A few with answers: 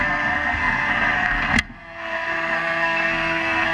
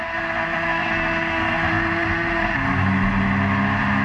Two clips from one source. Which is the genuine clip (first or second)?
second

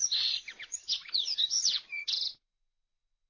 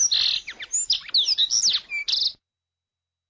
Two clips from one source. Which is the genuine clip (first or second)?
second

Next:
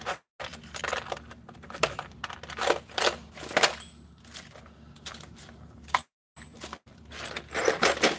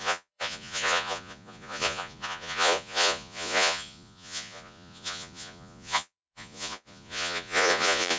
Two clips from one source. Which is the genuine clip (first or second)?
first